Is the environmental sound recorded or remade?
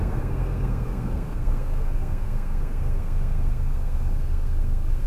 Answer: remade